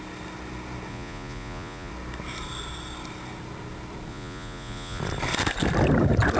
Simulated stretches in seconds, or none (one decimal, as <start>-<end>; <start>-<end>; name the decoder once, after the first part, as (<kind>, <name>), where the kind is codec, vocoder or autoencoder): 0.9-1.9 (vocoder, Vocos); 4.1-5.0